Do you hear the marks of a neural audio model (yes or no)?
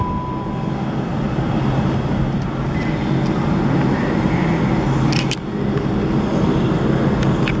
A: no